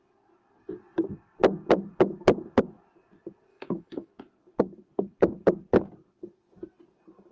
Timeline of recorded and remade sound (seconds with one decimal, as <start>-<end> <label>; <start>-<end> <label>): 0.0-3.5 recorded; 3.5-4.1 remade; 4.1-7.3 recorded